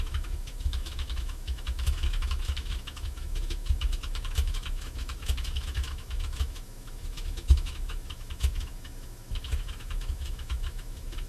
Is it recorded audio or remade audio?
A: remade